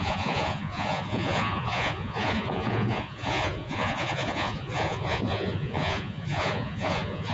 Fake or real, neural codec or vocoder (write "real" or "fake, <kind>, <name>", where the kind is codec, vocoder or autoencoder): fake, vocoder, Vocos